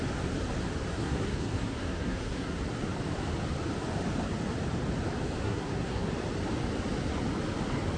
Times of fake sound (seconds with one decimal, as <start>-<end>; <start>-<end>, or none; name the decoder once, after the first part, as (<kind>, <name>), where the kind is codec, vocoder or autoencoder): 0.9-2.6 (codec, SNAC); 5.4-6.1